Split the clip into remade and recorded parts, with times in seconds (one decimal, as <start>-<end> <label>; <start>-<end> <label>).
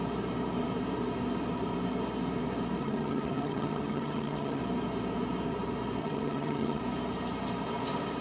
0.0-2.8 recorded; 2.8-4.6 remade; 4.6-6.0 recorded; 6.0-6.8 remade; 6.8-8.2 recorded